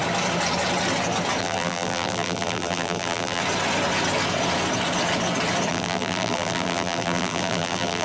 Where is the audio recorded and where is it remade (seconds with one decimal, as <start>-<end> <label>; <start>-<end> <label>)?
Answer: 0.0-1.4 recorded; 1.4-3.4 remade; 3.4-5.7 recorded; 5.7-8.0 remade